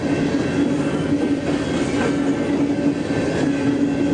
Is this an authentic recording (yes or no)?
yes